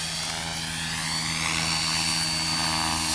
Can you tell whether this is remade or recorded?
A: recorded